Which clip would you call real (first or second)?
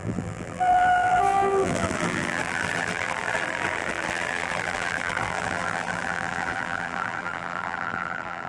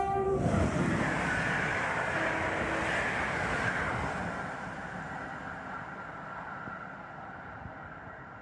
second